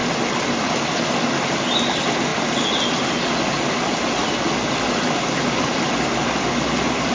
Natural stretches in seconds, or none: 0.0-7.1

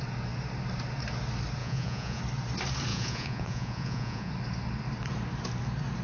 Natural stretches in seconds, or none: 0.0-1.6; 2.2-2.9; 4.3-6.0

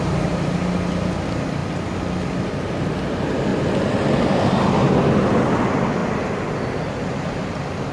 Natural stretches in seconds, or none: 0.0-7.9

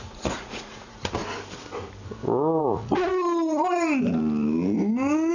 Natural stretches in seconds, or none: 1.2-2.6; 3.1-5.3

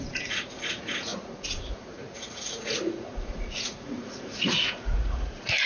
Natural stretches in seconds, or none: none

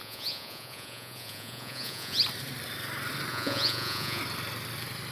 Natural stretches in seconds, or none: 2.2-3.3; 4.2-5.1

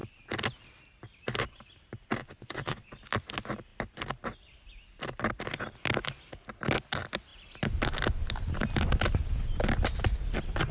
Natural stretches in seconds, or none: 0.0-2.2; 2.9-10.7

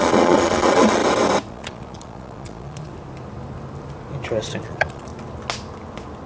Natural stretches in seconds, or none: 1.0-1.5; 2.9-4.6; 5.1-6.3